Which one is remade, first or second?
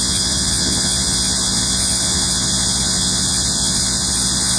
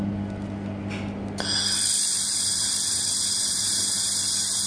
first